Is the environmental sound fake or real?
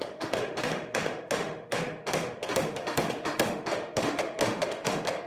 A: fake